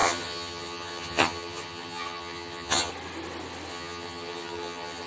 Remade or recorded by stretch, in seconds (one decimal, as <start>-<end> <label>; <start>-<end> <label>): 0.0-2.9 remade; 2.9-3.7 recorded; 3.7-5.1 remade